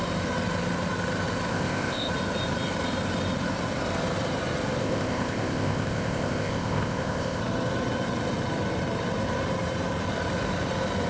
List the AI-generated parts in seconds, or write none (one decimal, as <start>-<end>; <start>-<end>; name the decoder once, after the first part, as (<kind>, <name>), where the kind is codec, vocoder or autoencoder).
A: 1.5-2.1 (codec, ZipCodec); 4.8-7.4

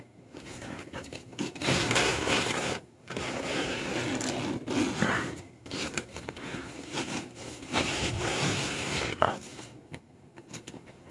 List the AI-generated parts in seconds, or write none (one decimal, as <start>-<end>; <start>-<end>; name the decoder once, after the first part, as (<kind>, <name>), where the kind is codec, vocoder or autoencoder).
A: 0.0-3.9 (codec, SNAC); 5.1-11.1